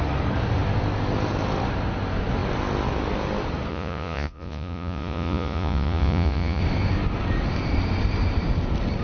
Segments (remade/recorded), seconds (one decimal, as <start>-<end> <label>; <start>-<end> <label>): 0.0-3.7 recorded; 3.7-6.6 remade; 6.6-9.0 recorded